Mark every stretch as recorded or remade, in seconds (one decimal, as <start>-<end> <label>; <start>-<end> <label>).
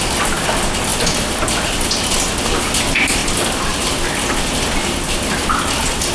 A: 0.0-6.1 recorded